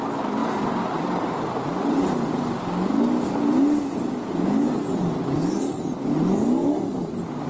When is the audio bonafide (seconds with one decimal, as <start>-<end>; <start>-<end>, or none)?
0.0-7.5